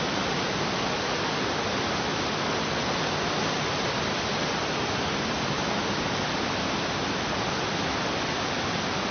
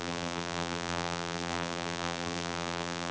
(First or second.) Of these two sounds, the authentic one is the first